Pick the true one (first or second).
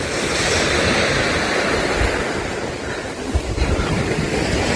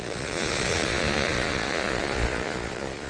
first